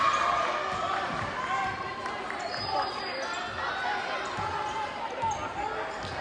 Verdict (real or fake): real